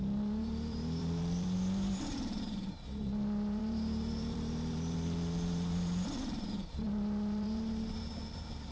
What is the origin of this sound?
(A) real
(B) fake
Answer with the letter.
B